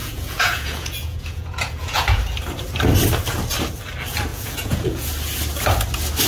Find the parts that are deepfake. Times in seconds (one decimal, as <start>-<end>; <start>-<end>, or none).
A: 0.0-2.2; 4.3-5.1